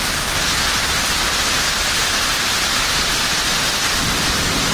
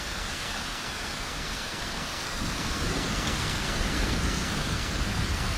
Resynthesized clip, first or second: second